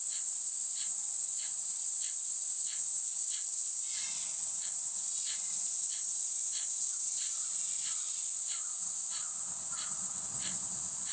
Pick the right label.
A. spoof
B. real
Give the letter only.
B